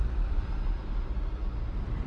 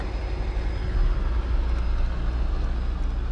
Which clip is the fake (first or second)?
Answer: first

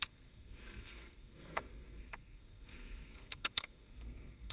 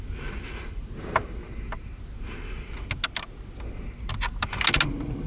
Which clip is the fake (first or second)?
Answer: first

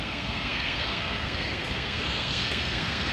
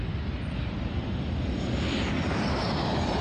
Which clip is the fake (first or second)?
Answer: first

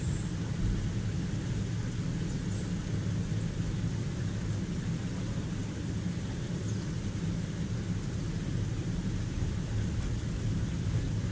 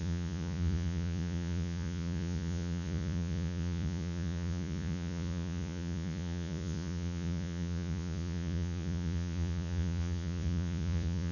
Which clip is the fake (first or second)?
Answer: second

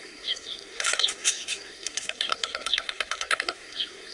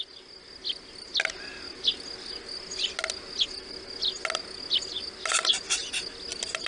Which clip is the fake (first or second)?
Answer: first